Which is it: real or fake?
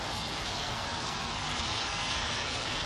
fake